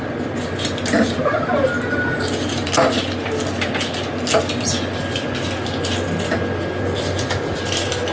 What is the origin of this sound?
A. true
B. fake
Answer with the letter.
A